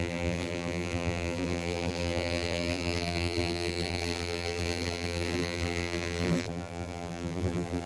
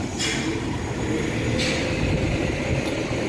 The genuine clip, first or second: second